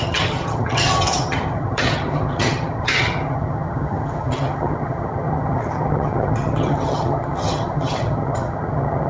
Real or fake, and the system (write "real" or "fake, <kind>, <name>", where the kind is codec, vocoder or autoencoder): fake, vocoder, HiFi-GAN